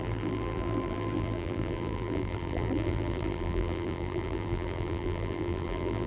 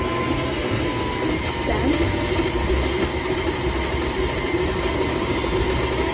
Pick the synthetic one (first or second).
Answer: first